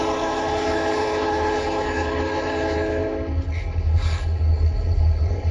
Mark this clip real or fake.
fake